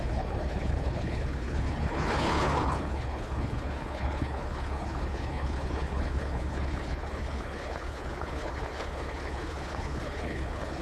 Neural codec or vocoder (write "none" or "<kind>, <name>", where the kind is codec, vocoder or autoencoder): codec, HILCodec